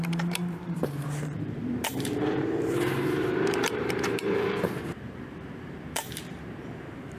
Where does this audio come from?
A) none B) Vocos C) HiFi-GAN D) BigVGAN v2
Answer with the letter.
D